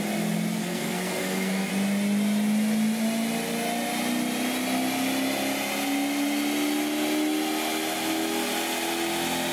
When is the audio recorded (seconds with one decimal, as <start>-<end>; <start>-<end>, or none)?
0.0-0.6; 1.7-9.5

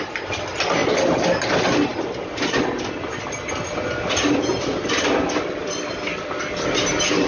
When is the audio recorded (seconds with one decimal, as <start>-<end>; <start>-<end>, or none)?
0.0-7.3

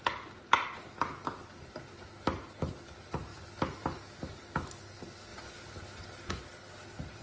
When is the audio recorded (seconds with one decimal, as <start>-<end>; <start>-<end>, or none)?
0.0-7.2